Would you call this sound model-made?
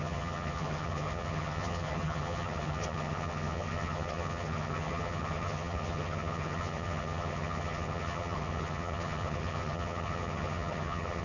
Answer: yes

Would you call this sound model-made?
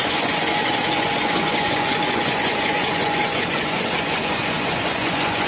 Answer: yes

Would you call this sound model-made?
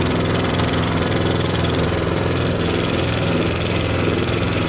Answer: yes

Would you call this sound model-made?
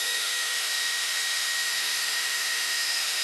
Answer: yes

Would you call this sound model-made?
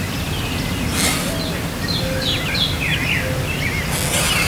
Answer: no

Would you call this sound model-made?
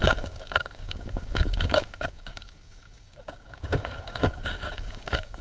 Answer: yes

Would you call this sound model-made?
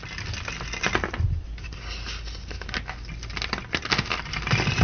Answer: no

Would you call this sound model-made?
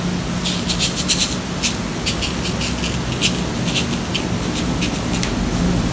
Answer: no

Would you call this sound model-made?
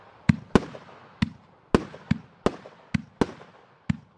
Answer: no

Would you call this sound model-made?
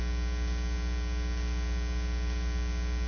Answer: no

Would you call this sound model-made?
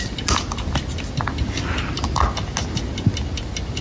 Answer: no